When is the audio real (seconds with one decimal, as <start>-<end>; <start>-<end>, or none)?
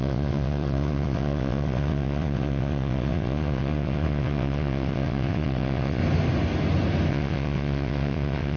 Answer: 6.0-7.1